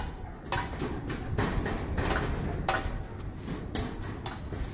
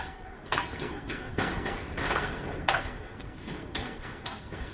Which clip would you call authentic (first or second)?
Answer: first